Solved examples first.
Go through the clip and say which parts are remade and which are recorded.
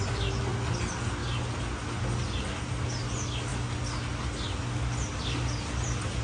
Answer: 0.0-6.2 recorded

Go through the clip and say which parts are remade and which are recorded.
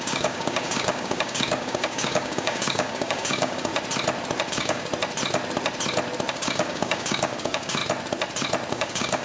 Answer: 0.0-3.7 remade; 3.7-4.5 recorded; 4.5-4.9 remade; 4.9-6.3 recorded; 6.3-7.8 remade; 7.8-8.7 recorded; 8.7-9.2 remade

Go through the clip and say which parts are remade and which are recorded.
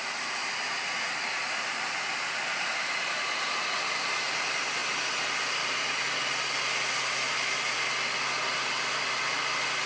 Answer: 0.0-9.9 recorded